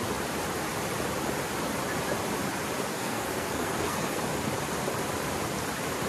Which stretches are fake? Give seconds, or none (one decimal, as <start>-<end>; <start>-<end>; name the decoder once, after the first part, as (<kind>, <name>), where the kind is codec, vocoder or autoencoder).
2.9-4.2 (codec, SNAC)